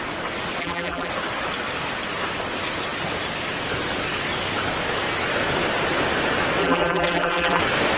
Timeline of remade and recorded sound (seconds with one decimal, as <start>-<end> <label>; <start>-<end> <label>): 0.0-0.6 recorded; 0.6-1.1 remade; 1.1-6.6 recorded; 6.6-7.6 remade; 7.6-8.0 recorded